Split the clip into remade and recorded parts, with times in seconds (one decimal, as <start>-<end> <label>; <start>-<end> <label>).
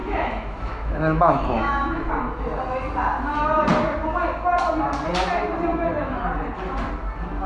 0.0-2.1 remade; 2.1-5.7 recorded; 5.7-6.2 remade; 6.2-7.5 recorded